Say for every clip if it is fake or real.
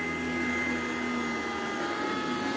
real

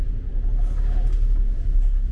real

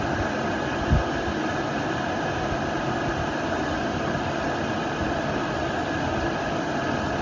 real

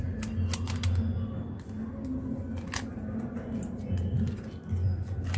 real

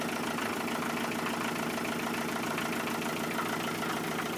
real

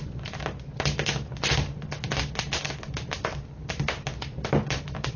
real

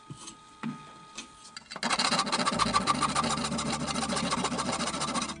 real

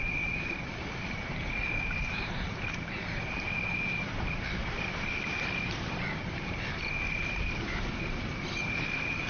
fake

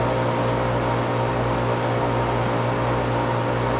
real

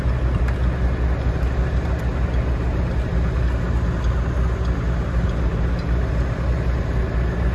real